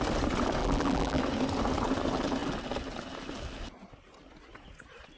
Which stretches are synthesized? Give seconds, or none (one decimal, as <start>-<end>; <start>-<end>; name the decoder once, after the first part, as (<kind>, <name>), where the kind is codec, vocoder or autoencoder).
0.6-1.2 (vocoder, BigVGAN v2)